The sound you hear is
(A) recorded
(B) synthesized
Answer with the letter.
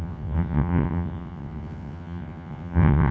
B